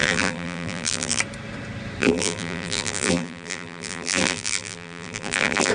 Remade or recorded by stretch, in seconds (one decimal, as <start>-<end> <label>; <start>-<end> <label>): 0.0-1.2 remade; 1.2-2.0 recorded; 2.0-5.7 remade